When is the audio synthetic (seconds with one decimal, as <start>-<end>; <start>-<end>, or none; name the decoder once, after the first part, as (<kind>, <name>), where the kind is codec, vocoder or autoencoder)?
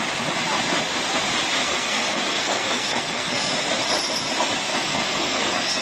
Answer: 1.6-3.5 (codec, SNAC); 4.7-5.8